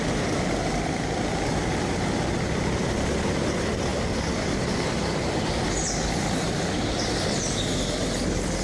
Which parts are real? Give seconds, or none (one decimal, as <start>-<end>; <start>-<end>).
0.0-8.6